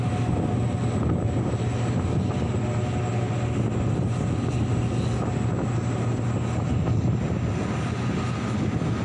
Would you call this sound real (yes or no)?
yes